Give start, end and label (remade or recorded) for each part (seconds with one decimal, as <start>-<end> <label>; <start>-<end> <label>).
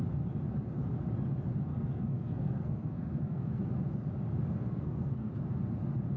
0.0-1.7 recorded; 1.7-3.6 remade; 3.6-4.4 recorded; 4.4-5.3 remade; 5.3-6.2 recorded